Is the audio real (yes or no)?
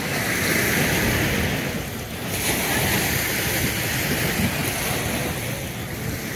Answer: yes